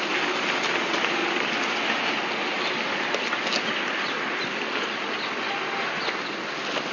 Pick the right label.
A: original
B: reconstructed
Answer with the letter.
A